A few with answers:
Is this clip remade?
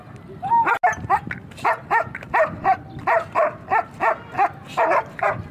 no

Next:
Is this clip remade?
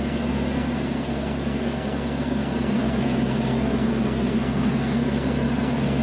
yes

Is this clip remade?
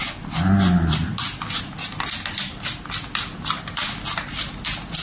no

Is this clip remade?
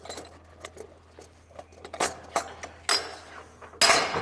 no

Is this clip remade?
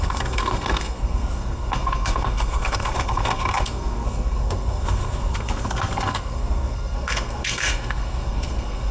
yes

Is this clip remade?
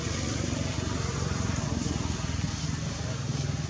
no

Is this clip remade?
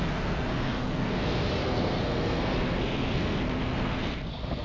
yes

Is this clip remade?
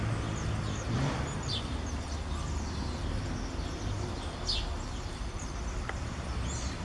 no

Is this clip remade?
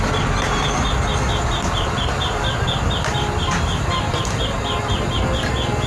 no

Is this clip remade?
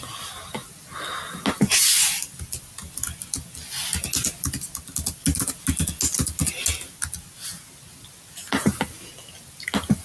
no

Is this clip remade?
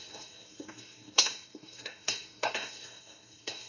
yes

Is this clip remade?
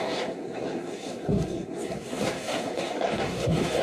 yes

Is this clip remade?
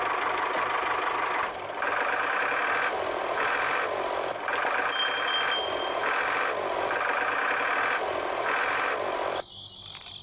no